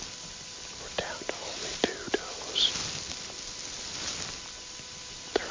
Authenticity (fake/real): real